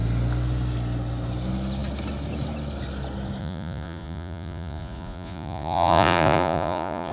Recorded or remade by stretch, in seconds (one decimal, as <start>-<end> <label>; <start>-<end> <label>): 0.0-3.4 recorded; 3.4-7.1 remade